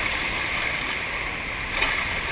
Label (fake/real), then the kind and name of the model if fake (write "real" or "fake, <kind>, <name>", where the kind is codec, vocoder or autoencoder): real